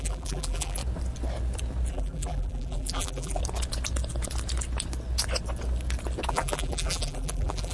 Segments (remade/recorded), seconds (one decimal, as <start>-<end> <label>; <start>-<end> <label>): 0.0-0.8 remade; 0.8-1.9 recorded; 1.9-3.4 remade; 3.4-6.3 recorded; 6.3-7.7 remade